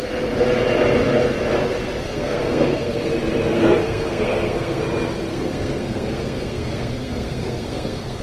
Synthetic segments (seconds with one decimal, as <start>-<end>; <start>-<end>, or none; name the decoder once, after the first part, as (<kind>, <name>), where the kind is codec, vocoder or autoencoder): 2.0-3.1 (codec, SNAC); 3.5-4.8; 5.3-8.2